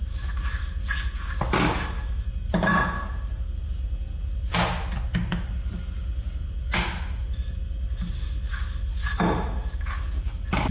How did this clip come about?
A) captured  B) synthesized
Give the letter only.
A